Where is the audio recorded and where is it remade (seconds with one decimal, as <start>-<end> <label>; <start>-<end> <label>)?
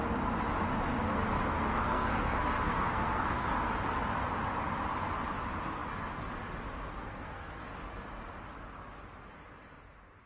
0.0-0.9 recorded; 0.9-3.7 remade; 3.7-6.9 recorded; 6.9-7.6 remade; 7.6-10.3 recorded